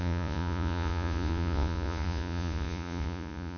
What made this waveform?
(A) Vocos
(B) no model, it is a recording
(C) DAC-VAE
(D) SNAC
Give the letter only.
A